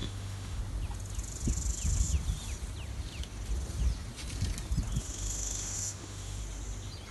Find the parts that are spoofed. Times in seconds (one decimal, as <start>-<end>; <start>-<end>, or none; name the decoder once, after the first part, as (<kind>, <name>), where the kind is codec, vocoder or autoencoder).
0.0-0.6 (autoencoder, DAC-VAE); 5.0-6.4